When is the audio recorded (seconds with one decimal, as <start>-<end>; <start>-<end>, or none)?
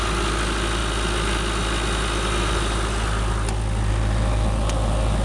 0.0-5.2